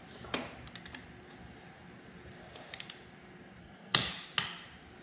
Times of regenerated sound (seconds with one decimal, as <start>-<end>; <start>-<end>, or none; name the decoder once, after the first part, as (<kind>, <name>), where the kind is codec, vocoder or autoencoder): 3.6-4.1 (codec, SNAC)